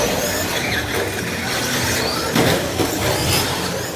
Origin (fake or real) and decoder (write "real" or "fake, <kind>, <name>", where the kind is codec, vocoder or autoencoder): real